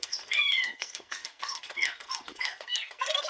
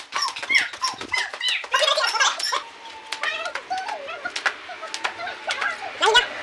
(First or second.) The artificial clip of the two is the first